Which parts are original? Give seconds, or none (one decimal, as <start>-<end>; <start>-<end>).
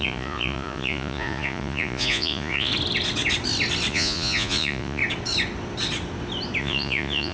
2.7-3.9; 5.0-6.6